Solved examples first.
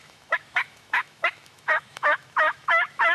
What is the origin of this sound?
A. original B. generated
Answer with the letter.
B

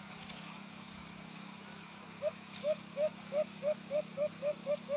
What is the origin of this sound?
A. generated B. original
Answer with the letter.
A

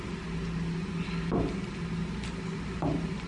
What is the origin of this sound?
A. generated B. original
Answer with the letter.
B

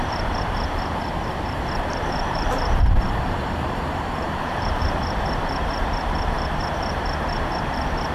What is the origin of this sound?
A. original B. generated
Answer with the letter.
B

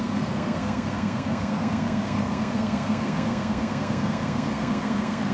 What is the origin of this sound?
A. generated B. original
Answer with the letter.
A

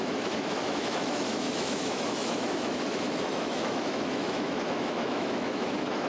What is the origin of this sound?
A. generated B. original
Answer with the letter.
A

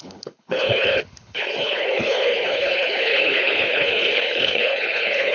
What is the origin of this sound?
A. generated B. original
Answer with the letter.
A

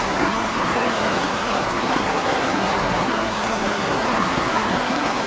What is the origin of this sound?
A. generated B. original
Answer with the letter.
A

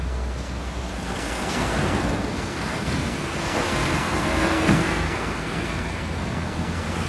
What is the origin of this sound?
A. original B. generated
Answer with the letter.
B